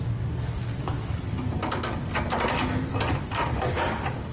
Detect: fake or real real